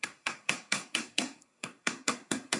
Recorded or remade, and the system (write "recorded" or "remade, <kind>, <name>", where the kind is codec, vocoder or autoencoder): remade, codec, SNAC